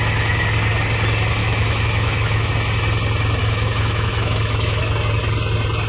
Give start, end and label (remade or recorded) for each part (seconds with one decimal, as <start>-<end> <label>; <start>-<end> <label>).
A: 0.0-1.4 recorded; 1.4-2.5 remade; 2.5-3.4 recorded; 3.4-4.8 remade; 4.8-5.9 recorded

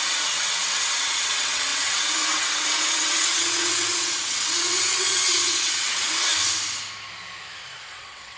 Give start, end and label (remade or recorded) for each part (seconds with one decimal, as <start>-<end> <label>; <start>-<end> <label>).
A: 0.0-6.3 remade; 6.3-7.9 recorded; 7.9-8.4 remade

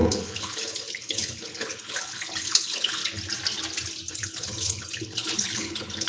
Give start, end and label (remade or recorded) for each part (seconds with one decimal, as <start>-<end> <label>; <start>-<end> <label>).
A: 0.0-3.0 remade; 3.0-4.1 recorded; 4.1-6.1 remade